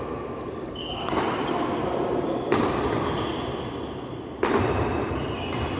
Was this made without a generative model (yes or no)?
yes